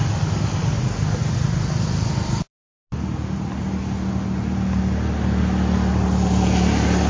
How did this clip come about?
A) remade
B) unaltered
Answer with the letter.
B